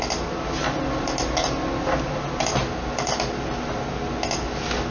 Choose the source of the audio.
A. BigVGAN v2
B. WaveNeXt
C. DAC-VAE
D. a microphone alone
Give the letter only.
D